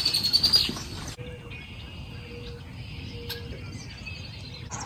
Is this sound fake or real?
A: real